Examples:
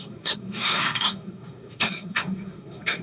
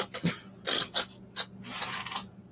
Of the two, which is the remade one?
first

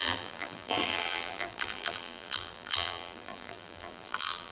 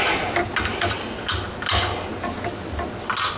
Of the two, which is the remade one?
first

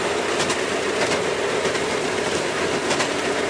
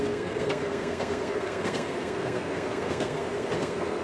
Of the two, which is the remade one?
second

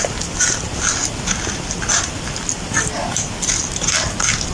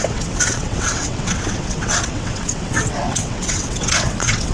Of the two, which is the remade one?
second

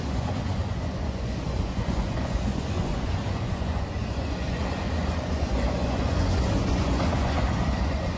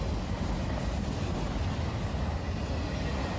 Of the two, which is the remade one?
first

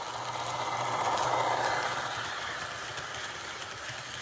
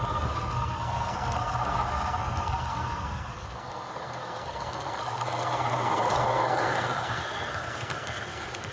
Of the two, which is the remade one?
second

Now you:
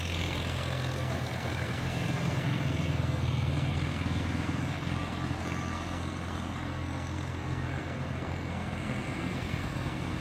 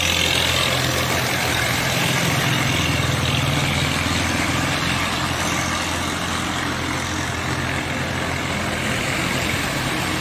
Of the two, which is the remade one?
first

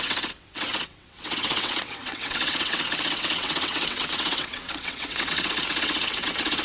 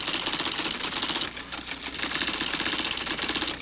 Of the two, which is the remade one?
first